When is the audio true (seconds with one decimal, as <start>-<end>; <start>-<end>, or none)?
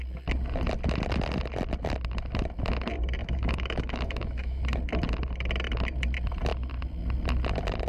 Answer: 0.0-3.2; 4.6-7.9